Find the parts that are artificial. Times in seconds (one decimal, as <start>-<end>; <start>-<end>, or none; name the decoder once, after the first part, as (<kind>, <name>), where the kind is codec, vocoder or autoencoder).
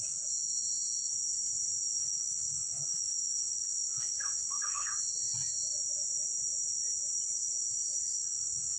0.0-0.5 (codec, SNAC); 2.0-4.9; 8.2-8.8